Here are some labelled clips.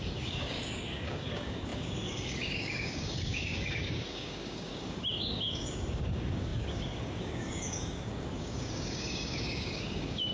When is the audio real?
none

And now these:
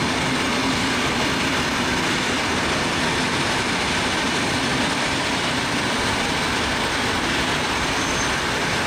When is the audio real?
0.0-0.5; 4.3-4.7; 8.4-8.9